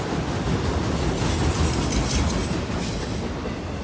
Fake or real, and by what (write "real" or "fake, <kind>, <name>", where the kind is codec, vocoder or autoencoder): real